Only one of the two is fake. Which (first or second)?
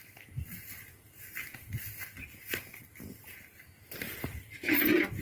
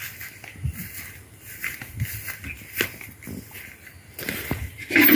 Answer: first